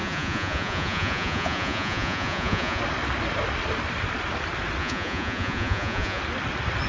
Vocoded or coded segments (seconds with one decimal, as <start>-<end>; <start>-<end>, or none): 0.0-2.8; 4.8-6.2